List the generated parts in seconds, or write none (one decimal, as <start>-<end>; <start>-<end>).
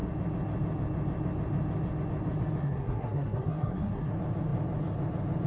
2.6-4.1